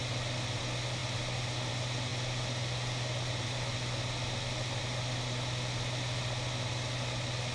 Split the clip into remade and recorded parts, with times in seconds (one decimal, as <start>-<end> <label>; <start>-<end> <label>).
0.0-7.5 recorded